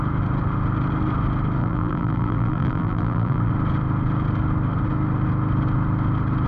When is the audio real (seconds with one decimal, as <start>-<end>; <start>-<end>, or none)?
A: 0.0-1.6; 3.5-6.5